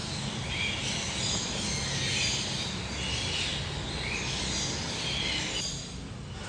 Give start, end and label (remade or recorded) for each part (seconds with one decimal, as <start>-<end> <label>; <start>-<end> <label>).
0.0-6.5 recorded